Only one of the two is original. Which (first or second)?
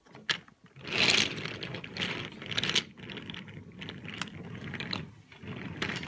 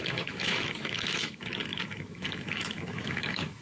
first